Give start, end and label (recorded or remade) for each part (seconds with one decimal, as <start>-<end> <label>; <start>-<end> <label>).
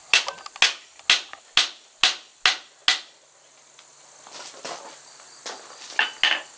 0.0-6.6 recorded